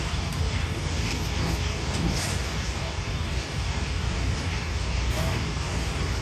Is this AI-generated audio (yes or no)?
yes